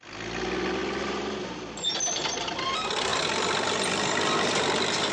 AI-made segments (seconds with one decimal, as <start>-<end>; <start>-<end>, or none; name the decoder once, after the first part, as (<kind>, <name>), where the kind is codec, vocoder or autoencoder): 0.8-2.7 (vocoder, BigVGAN v2); 3.1-5.1